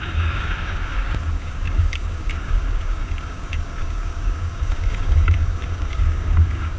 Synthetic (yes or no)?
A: yes